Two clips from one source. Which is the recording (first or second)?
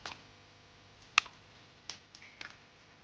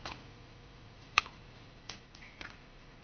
first